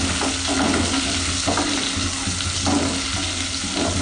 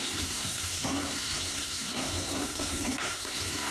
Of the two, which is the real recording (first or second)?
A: first